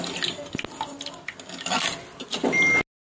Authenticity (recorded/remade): recorded